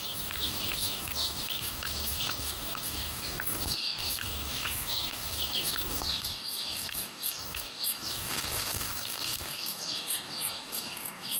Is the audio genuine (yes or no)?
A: no